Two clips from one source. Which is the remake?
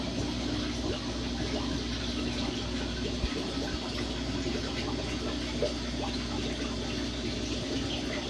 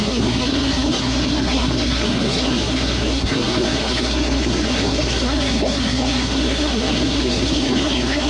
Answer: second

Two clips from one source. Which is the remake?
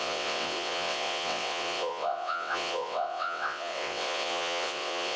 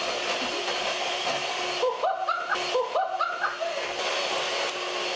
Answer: first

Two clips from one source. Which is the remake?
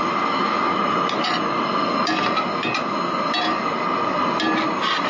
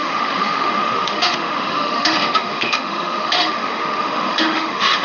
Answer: second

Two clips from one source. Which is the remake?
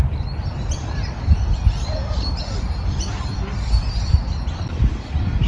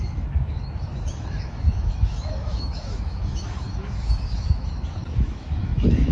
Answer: second